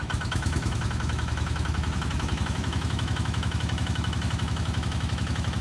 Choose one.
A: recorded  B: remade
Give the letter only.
B